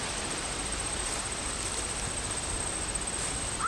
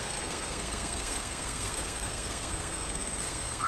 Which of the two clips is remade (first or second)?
second